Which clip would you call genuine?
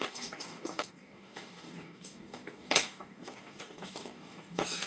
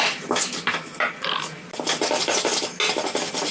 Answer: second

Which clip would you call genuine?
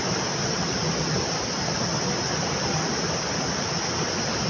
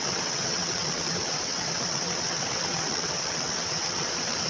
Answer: first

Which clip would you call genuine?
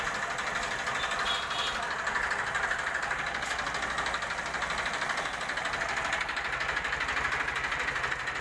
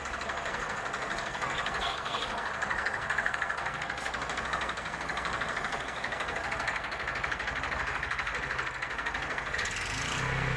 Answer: first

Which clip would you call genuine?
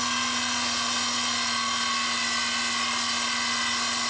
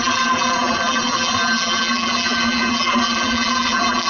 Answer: first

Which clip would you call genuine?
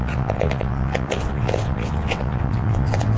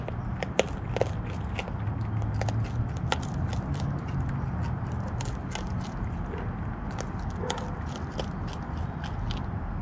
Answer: second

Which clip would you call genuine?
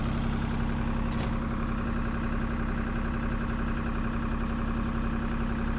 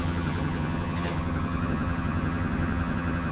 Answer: first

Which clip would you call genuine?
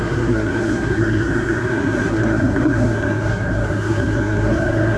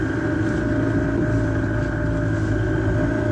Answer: second